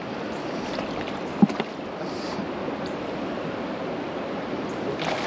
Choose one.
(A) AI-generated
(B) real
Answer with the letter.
B